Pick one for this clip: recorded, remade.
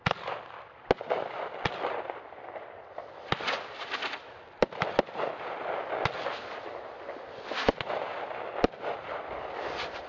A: recorded